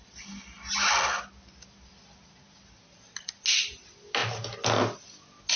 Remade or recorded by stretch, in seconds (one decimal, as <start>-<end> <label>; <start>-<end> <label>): 0.0-5.6 recorded